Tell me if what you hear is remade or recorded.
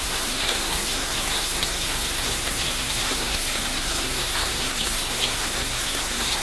remade